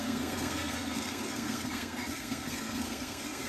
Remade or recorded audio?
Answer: remade